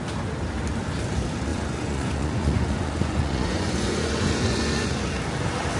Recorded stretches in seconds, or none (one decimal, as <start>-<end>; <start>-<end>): 0.0-1.5; 5.0-5.8